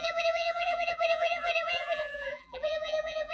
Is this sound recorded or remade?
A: remade